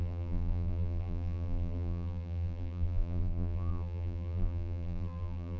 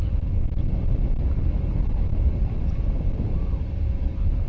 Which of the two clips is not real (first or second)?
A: first